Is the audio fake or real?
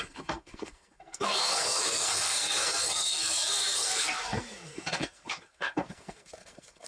fake